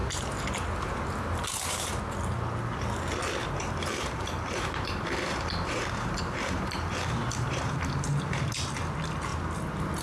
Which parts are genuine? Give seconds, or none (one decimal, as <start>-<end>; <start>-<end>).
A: 1.9-3.4; 8.5-10.0